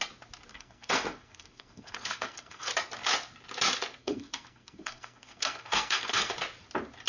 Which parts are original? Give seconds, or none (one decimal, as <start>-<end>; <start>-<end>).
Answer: 0.0-0.5; 2.7-4.0; 6.3-7.1